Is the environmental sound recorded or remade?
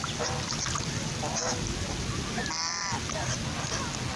recorded